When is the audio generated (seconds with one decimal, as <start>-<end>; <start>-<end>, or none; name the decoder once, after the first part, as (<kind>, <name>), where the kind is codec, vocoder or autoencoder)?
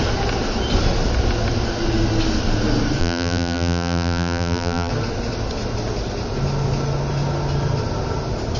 3.0-4.9 (vocoder, BigVGAN v2)